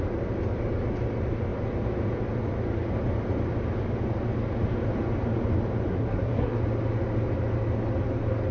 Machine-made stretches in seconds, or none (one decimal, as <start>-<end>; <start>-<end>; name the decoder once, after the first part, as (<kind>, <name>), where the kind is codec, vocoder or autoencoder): 5.9-6.6 (codec, SNAC)